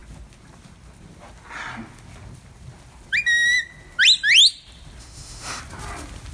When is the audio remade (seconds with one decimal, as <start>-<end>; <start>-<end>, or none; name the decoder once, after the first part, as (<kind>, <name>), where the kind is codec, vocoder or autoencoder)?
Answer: 5.0-5.6 (autoencoder, DAC-VAE)